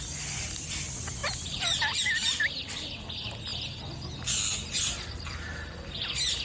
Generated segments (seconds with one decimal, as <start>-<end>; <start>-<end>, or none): none